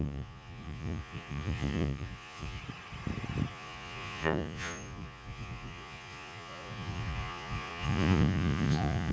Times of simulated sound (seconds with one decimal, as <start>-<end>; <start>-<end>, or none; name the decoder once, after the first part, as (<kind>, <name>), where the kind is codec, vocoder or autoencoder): 0.0-2.6 (vocoder, Vocos); 3.5-9.1